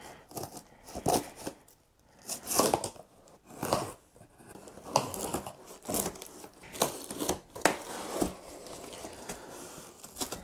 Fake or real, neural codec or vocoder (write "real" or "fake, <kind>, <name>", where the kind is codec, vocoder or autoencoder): real